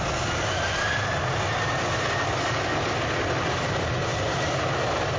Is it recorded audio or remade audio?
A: recorded